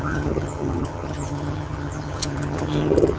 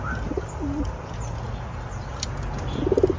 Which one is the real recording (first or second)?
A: second